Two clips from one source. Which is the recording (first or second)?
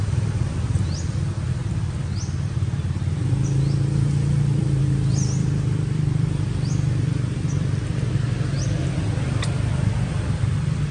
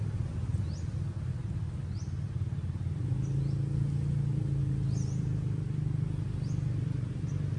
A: second